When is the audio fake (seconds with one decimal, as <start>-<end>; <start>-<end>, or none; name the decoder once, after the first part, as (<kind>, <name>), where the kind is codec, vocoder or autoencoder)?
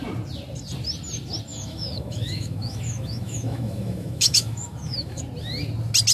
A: 1.5-5.2 (autoencoder, DAC-VAE)